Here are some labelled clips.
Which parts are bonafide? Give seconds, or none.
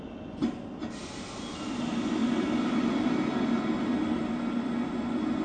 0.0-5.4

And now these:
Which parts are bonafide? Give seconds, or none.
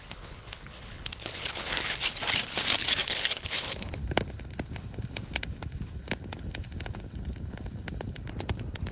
2.1-3.1; 4.0-8.3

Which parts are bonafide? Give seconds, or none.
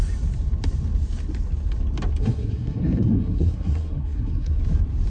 0.0-2.2; 4.6-5.1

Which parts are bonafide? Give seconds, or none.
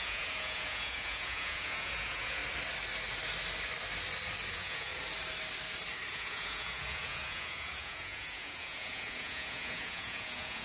2.4-4.5; 4.9-6.1